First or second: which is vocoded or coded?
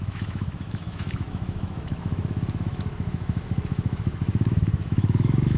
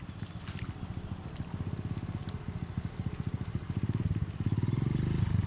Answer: first